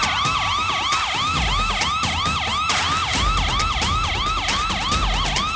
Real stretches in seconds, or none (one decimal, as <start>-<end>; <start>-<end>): 0.0-3.1; 4.7-5.6